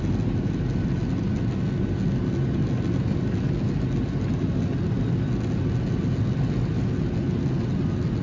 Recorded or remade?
recorded